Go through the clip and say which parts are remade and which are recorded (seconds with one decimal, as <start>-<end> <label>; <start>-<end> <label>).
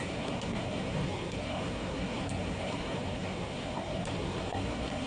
0.0-5.1 remade